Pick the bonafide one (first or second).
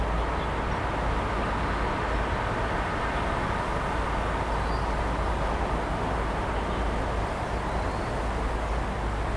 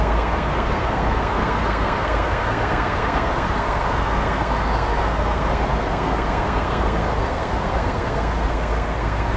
first